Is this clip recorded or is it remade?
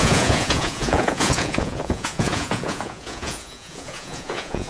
remade